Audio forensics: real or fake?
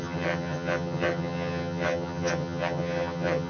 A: fake